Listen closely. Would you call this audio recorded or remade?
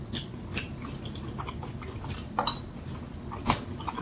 recorded